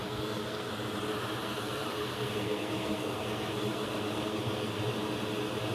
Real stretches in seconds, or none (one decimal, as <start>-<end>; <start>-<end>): 0.7-1.4; 4.8-5.7